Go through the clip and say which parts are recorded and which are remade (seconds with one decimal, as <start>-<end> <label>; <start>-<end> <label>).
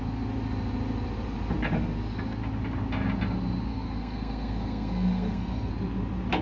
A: 0.0-3.7 recorded; 3.7-5.7 remade; 5.7-6.4 recorded